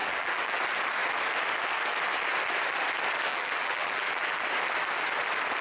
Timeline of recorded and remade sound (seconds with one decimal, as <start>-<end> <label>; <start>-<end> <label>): 0.0-0.6 remade; 0.6-3.3 recorded; 3.3-4.4 remade; 4.4-5.6 recorded